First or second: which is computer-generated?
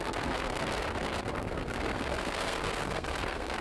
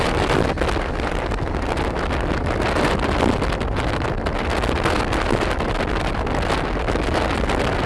first